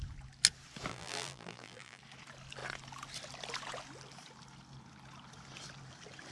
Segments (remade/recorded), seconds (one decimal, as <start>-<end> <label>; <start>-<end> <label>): 0.0-0.9 recorded; 0.9-2.0 remade; 2.0-6.3 recorded